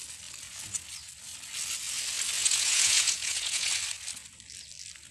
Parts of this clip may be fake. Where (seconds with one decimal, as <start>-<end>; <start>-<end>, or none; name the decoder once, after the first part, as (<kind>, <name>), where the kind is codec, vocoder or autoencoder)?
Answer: 2.4-3.7 (vocoder, Vocos)